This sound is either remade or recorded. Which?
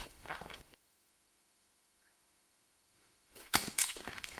remade